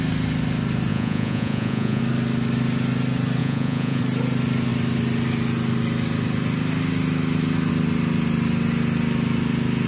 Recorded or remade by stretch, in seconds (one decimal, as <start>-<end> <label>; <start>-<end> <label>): 0.0-0.9 recorded; 0.9-2.0 remade; 2.0-3.4 recorded; 3.4-4.0 remade; 4.0-9.9 recorded